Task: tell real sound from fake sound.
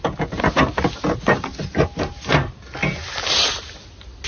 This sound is real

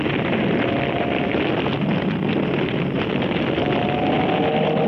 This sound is real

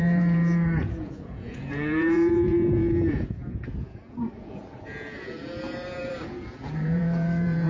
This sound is fake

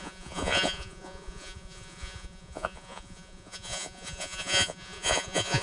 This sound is fake